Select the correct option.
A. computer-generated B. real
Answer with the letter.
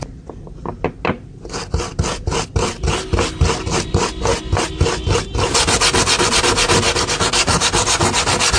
B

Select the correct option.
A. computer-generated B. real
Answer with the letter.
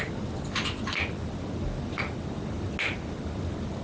B